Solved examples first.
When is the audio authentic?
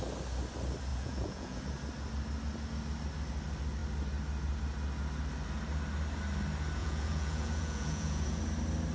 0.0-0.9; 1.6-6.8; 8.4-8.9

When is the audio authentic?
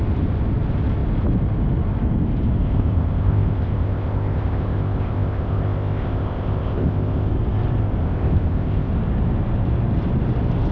0.0-2.6; 7.3-8.0; 8.9-10.7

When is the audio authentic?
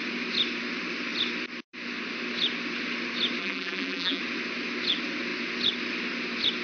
0.0-3.4; 4.2-6.6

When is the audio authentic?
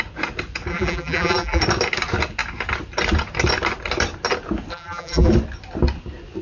0.0-0.7; 1.6-4.7; 5.3-6.4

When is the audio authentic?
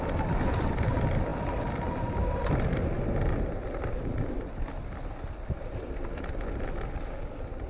0.0-7.7